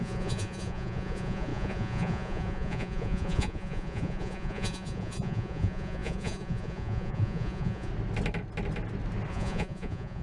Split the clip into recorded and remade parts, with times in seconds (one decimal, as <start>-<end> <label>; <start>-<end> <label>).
0.0-7.9 remade; 7.9-9.3 recorded; 9.3-10.2 remade

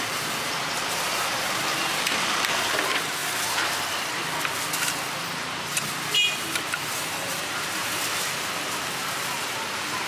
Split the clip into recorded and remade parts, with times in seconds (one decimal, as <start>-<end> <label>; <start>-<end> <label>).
0.0-3.2 remade; 3.2-6.5 recorded; 6.5-10.1 remade

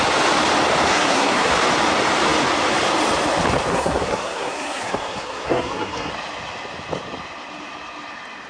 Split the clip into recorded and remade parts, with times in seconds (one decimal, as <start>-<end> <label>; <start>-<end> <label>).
0.0-0.9 recorded; 0.9-1.5 remade; 1.5-3.7 recorded; 3.7-6.1 remade; 6.1-8.5 recorded

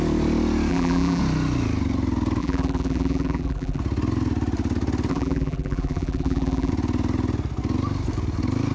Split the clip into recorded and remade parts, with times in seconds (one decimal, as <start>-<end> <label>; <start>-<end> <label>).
0.0-0.7 recorded; 0.7-1.2 remade; 1.2-2.4 recorded; 2.4-3.8 remade; 3.8-5.1 recorded; 5.1-6.7 remade; 6.7-8.7 recorded

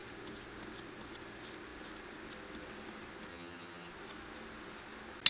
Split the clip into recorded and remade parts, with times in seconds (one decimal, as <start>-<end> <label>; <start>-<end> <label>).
0.0-3.3 recorded; 3.3-3.9 remade; 3.9-5.3 recorded